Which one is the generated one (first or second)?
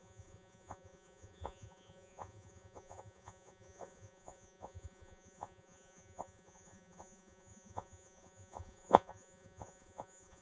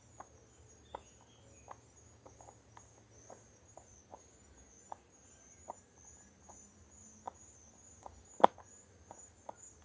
first